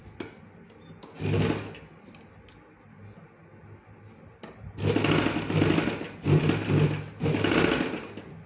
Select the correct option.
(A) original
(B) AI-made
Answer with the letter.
A